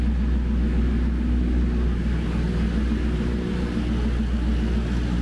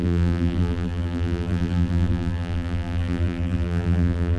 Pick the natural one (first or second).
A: first